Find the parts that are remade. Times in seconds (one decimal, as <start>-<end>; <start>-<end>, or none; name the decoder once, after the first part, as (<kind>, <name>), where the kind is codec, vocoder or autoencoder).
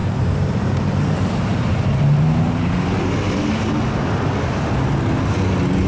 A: 0.0-2.4 (vocoder, BigVGAN v2)